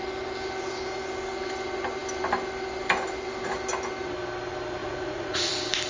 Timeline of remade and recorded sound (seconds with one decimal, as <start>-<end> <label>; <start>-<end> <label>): 0.0-4.8 recorded; 4.8-5.5 remade; 5.5-5.9 recorded